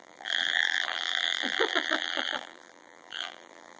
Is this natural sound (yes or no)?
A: no